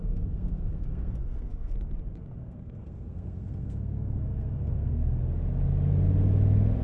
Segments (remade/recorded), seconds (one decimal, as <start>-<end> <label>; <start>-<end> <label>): 0.0-1.7 remade; 1.7-2.4 recorded; 2.4-5.2 remade; 5.2-6.8 recorded